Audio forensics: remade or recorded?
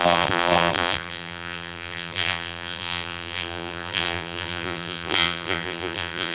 remade